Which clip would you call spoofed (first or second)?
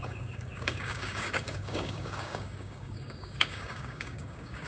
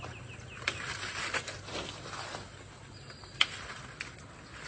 first